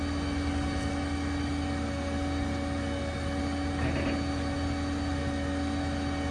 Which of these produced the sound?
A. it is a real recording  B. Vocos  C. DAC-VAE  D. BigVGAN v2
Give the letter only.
A